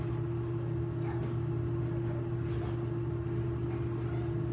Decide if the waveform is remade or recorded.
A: recorded